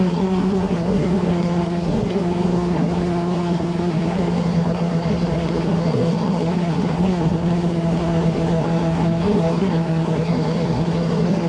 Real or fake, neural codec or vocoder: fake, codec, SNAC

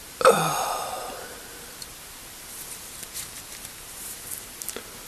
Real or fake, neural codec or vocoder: fake, vocoder, BigVGAN v2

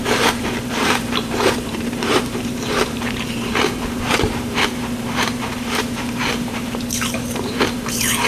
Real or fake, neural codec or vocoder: fake, vocoder, BigVGAN v2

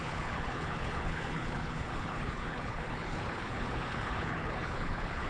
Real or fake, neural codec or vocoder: fake, codec, HILCodec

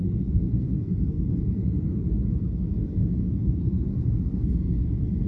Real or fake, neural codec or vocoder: fake, codec, SNAC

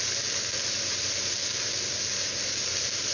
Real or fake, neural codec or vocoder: real